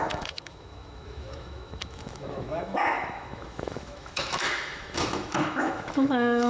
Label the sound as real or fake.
fake